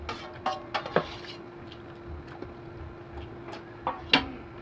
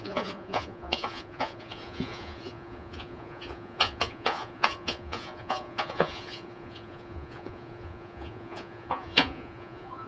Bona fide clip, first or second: first